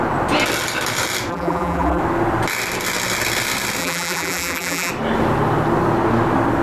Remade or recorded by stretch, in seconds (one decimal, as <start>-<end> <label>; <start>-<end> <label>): 0.0-1.3 recorded; 1.3-2.0 remade; 2.0-3.8 recorded; 3.8-4.9 remade; 4.9-6.6 recorded